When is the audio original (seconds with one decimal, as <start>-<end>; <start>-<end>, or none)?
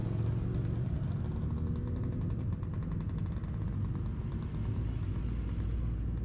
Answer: 0.0-6.2